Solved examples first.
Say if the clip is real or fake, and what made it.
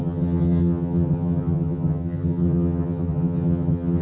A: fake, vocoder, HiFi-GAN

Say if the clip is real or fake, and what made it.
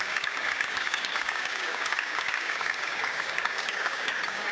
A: fake, codec, DAC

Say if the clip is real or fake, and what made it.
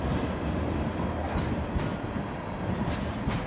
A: real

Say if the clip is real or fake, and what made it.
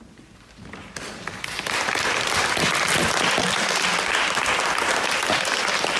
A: real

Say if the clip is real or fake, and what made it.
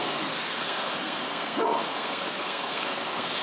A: fake, codec, SNAC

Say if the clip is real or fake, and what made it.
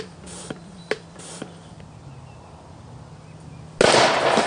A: real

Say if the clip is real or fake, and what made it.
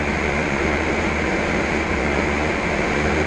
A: fake, vocoder, Vocos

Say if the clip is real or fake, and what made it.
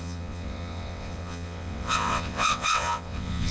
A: fake, vocoder, WaveNeXt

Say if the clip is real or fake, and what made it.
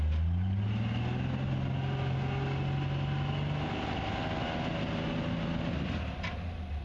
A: real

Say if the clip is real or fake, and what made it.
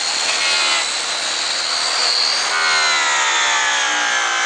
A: real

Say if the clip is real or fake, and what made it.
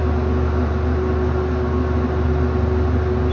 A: real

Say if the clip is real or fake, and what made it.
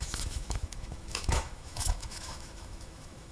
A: fake, autoencoder, DAC-VAE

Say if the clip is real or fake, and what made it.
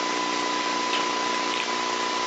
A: real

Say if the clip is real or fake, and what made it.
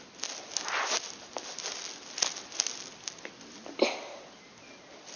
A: real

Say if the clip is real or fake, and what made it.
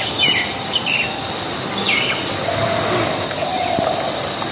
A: real